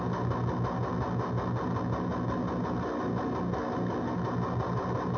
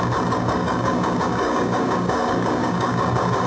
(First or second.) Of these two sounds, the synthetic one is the second